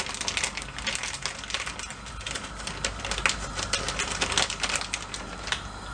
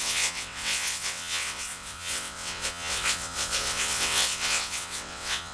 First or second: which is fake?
second